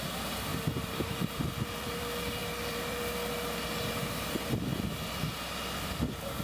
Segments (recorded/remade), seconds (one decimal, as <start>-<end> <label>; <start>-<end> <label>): 0.0-0.5 recorded; 0.5-2.0 remade; 2.0-2.4 recorded; 2.4-3.0 remade; 3.0-6.4 recorded